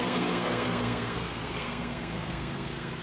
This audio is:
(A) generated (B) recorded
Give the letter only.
A